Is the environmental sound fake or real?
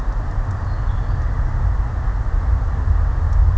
real